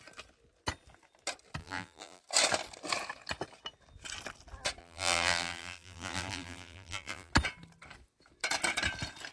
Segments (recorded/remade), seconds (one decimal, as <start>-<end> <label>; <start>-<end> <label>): 0.0-1.6 recorded; 1.6-2.2 remade; 2.2-4.8 recorded; 4.8-7.3 remade; 7.3-9.3 recorded